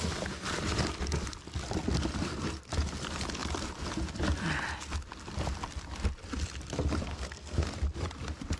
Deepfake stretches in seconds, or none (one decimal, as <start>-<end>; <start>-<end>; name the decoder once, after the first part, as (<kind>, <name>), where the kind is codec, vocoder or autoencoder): 7.1-7.7 (codec, SNAC)